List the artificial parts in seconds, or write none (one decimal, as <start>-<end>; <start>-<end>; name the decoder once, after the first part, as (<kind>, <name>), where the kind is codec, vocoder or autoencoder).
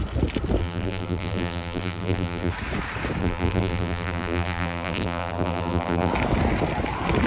0.6-2.5 (vocoder, BigVGAN v2); 3.2-6.1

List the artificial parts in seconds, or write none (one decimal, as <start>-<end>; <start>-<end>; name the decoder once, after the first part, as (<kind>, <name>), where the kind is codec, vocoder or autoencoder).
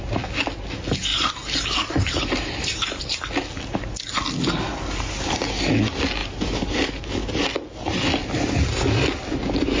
1.1-3.0 (vocoder, BigVGAN v2); 6.2-6.9